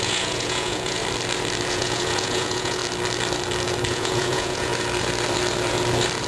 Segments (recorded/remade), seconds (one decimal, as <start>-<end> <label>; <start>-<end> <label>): 0.0-1.0 remade; 1.0-1.7 recorded; 1.7-2.8 remade; 2.8-3.9 recorded; 3.9-4.7 remade; 4.7-6.3 recorded

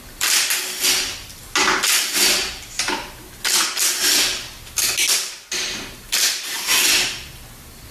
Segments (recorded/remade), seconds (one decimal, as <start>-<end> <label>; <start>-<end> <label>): 0.0-7.9 recorded

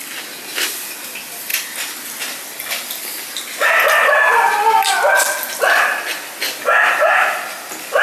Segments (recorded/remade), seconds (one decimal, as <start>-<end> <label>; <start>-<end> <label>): 0.0-8.0 recorded

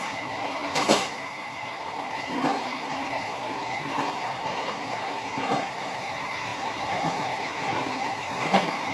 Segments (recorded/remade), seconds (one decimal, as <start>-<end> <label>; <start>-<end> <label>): 0.0-8.9 remade

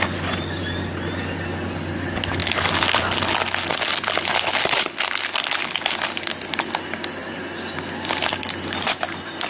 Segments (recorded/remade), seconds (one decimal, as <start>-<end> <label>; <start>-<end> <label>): 0.0-9.5 recorded

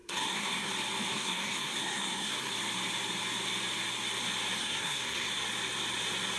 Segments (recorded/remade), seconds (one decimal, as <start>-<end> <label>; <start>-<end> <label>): 0.0-0.7 remade; 0.7-1.1 recorded; 1.1-2.5 remade; 2.5-4.6 recorded; 4.6-5.3 remade; 5.3-6.4 recorded

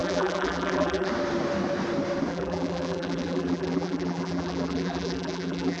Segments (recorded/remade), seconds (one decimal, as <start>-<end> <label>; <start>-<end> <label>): 0.0-1.1 remade; 1.1-2.3 recorded; 2.3-5.8 remade